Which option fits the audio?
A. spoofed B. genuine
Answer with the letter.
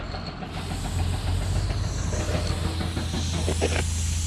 B